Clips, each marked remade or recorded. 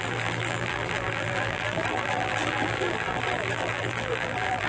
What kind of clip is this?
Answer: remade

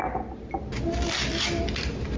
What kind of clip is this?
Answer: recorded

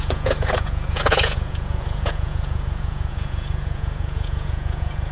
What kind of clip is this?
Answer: remade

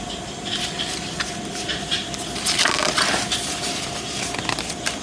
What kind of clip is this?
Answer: recorded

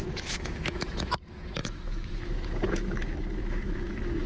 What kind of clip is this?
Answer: remade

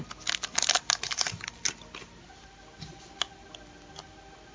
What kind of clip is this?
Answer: recorded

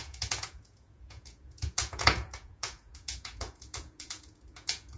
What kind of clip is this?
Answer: remade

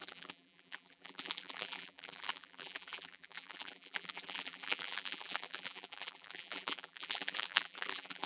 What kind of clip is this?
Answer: remade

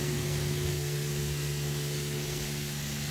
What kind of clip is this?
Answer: remade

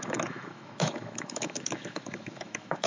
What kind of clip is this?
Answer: remade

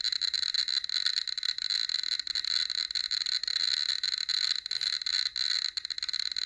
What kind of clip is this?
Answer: recorded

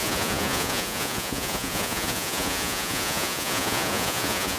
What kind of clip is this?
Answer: remade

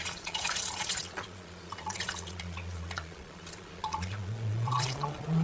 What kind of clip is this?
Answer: remade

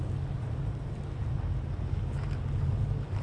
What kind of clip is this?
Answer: recorded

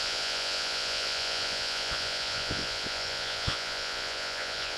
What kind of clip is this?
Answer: remade